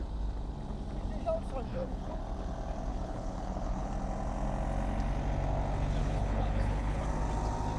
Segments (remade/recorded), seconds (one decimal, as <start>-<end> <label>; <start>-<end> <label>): 0.0-1.7 recorded; 1.7-2.2 remade; 2.2-2.9 recorded; 2.9-3.9 remade; 3.9-6.0 recorded; 6.0-7.0 remade; 7.0-7.8 recorded